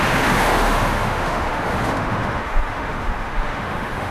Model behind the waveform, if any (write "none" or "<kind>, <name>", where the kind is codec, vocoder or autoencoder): autoencoder, DAC-VAE